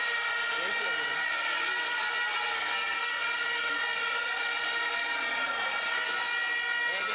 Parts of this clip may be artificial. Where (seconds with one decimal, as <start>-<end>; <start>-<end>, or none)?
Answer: 2.5-3.1